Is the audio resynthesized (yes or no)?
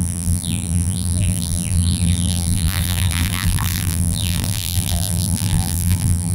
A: yes